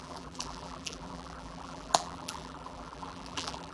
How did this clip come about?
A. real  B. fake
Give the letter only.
B